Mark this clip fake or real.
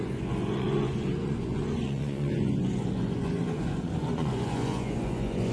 fake